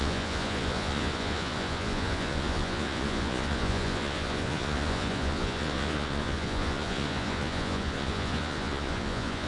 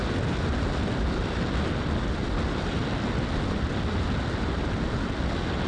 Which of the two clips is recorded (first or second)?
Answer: second